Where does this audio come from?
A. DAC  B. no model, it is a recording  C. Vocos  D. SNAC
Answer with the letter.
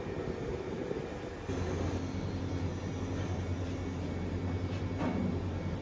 B